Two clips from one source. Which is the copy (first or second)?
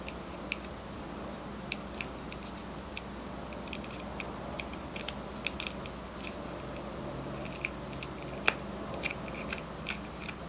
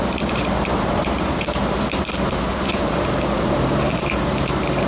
second